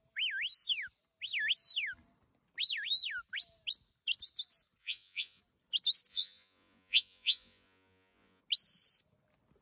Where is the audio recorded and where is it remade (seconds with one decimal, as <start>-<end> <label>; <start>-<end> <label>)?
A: 0.0-4.8 recorded; 4.8-5.4 remade; 5.4-6.1 recorded; 6.1-8.4 remade; 8.4-9.6 recorded